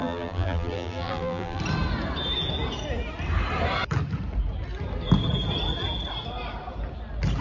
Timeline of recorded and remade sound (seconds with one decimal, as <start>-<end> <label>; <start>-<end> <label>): 0.0-1.6 remade; 1.6-7.4 recorded